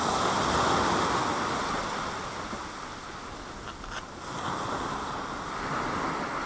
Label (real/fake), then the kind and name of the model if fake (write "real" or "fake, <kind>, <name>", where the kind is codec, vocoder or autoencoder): real